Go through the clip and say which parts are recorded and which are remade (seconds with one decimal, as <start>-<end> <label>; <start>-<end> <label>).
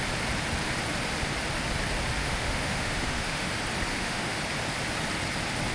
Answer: 0.0-2.2 recorded; 2.2-3.5 remade; 3.5-3.9 recorded; 3.9-4.4 remade; 4.4-5.7 recorded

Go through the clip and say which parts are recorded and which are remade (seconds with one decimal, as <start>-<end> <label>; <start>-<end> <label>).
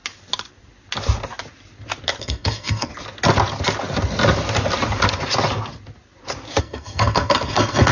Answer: 0.0-2.2 recorded; 2.2-2.9 remade; 2.9-6.6 recorded; 6.6-7.9 remade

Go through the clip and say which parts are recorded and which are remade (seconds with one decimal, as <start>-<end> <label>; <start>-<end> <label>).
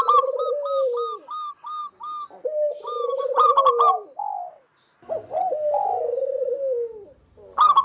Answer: 0.0-7.8 recorded